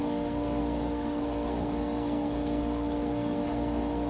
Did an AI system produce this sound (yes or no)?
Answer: yes